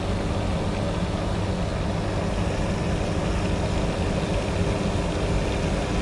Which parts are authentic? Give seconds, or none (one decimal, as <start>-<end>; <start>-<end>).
0.0-6.0